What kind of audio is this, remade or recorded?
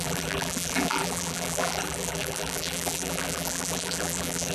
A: remade